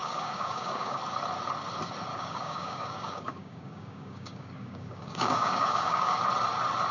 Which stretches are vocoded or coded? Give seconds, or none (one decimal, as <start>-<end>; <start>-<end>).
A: 0.0-1.0; 2.1-6.2